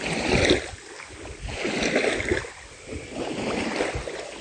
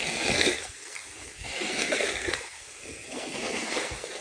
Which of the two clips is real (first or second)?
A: first